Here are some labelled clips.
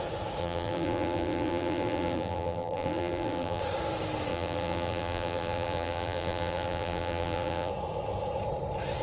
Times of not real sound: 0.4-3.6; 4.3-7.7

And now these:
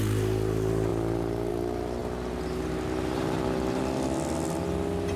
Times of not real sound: none

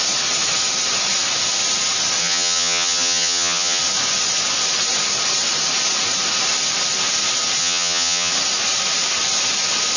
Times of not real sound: 2.2-3.8; 7.6-8.3

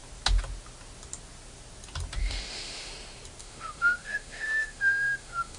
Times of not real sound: 2.2-2.9; 3.4-5.6